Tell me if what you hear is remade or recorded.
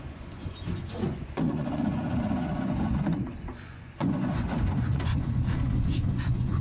remade